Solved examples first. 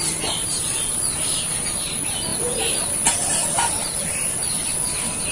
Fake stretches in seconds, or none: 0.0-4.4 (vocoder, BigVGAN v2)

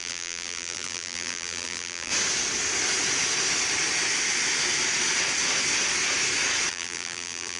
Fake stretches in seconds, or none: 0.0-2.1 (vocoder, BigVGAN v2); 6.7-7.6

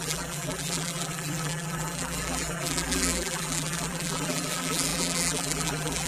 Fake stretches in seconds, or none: 0.0-6.1 (vocoder, BigVGAN v2)